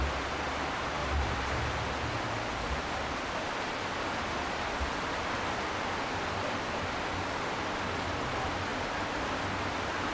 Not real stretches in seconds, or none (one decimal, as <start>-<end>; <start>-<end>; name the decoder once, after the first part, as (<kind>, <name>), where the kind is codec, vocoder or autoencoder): 1.0-1.6 (vocoder, BigVGAN v2)